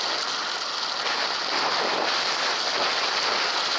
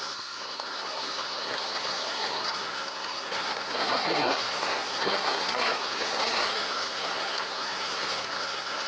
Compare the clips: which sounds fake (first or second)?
second